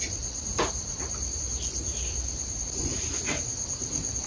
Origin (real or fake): real